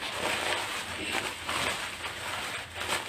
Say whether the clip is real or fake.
real